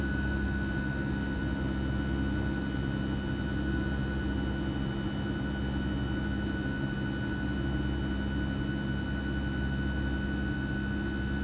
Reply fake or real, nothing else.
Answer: real